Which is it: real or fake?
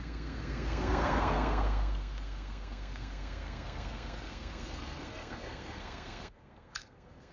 fake